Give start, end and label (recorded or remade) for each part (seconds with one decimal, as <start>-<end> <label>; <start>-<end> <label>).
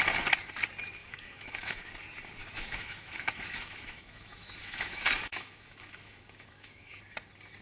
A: 0.0-1.0 recorded; 1.0-1.9 remade; 1.9-2.4 recorded; 2.4-7.0 remade; 7.0-7.6 recorded